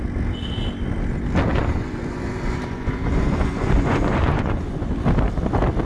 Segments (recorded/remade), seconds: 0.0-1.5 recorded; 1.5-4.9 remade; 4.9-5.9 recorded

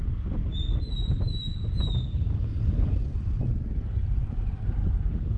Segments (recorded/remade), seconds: 0.0-1.6 recorded; 1.6-3.0 remade; 3.0-4.8 recorded; 4.8-5.4 remade

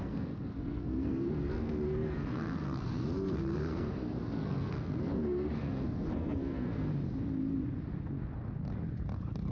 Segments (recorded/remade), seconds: 0.0-6.9 remade; 6.9-9.5 recorded

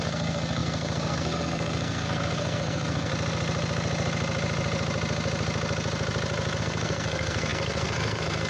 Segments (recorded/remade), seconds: 0.0-3.1 remade; 3.1-6.6 recorded; 6.6-8.5 remade

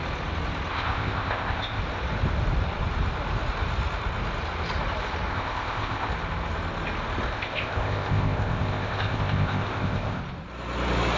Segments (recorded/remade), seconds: 0.0-0.7 recorded; 0.7-1.8 remade; 1.8-5.3 recorded; 5.3-6.1 remade; 6.1-7.3 recorded; 7.3-10.2 remade; 10.2-11.2 recorded

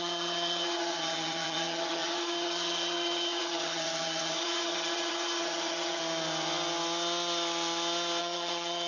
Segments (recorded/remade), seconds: 0.0-6.0 remade; 6.0-8.2 recorded; 8.2-8.9 remade

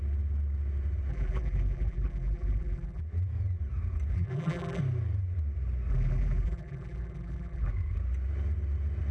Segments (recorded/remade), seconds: 0.0-1.1 recorded; 1.1-3.0 remade; 3.0-4.1 recorded; 4.1-4.8 remade; 4.8-5.9 recorded; 5.9-7.7 remade; 7.7-9.1 recorded